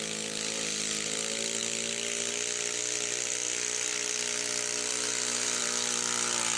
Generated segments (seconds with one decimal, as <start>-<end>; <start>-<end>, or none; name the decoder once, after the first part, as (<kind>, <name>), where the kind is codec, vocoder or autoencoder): none